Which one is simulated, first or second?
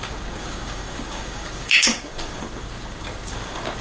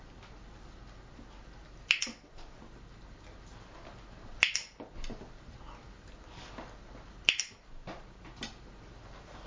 first